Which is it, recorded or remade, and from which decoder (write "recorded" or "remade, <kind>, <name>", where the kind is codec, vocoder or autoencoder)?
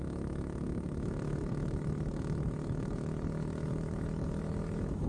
remade, autoencoder, DAC-VAE